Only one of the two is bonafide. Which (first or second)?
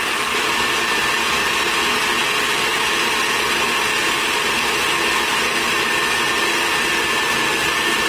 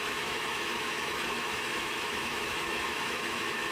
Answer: first